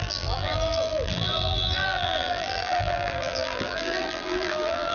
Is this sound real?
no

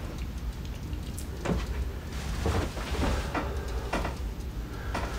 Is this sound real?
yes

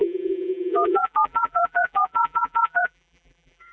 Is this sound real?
no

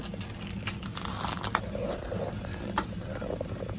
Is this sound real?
yes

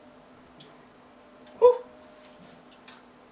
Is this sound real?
yes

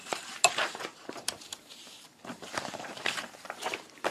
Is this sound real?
no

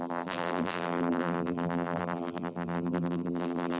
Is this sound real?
no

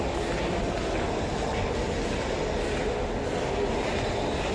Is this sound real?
yes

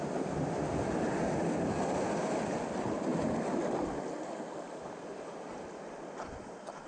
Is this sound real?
yes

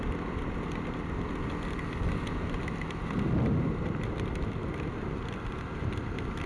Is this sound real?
yes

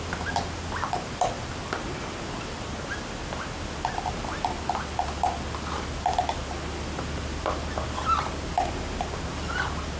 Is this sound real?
yes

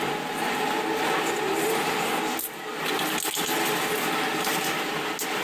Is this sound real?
yes